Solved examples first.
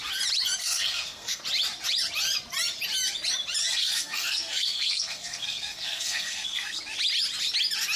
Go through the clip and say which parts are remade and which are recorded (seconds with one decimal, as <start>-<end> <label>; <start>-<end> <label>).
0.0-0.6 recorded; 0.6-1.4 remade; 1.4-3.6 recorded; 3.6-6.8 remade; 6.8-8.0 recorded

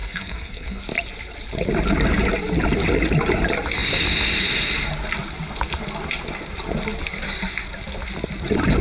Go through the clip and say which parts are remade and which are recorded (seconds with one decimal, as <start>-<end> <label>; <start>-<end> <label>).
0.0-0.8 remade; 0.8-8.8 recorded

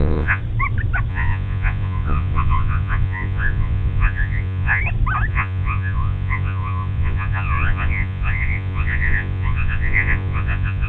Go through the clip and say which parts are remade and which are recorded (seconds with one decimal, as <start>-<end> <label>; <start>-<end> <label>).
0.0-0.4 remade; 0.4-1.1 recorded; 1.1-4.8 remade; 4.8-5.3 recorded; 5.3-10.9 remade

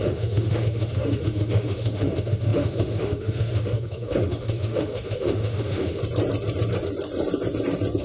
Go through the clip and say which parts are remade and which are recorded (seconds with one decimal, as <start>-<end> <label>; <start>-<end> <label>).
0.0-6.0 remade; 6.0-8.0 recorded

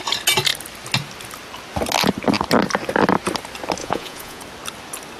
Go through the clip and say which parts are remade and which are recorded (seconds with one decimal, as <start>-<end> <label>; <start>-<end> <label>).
0.0-3.8 recorded; 3.8-4.4 remade; 4.4-5.2 recorded

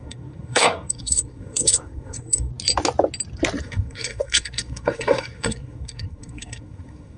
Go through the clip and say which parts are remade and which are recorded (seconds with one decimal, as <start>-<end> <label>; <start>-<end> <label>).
0.0-2.5 remade; 2.5-3.6 recorded; 3.6-7.2 remade